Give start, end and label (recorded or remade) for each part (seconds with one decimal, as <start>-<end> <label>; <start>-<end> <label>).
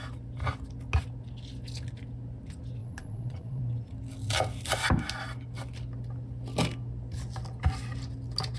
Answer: 0.0-2.8 recorded; 2.8-3.6 remade; 3.6-8.6 recorded